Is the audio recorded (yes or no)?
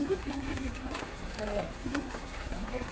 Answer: no